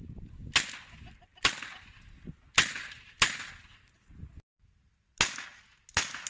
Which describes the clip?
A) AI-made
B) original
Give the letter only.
B